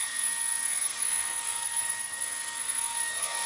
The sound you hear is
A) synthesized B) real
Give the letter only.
A